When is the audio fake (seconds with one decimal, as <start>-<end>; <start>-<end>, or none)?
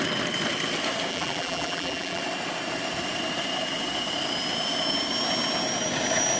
1.1-2.2